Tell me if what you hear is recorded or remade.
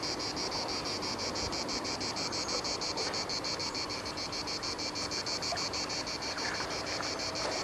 remade